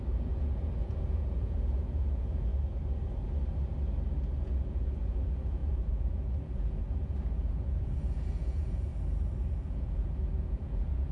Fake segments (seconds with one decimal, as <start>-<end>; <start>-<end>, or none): 0.0-2.5; 4.4-8.9; 9.6-11.1

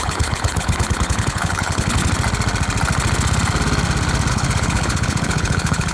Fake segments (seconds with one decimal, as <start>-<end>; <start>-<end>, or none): 0.0-2.0; 4.3-5.9

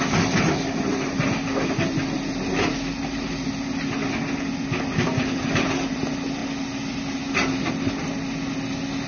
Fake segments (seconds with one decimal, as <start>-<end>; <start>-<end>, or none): none